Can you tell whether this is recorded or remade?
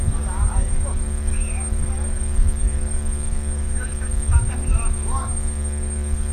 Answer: remade